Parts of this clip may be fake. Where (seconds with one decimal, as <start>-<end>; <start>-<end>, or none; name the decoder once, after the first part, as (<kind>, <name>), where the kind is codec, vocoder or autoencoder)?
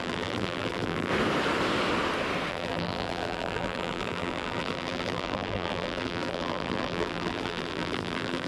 0.0-1.1 (vocoder, BigVGAN v2); 2.5-8.5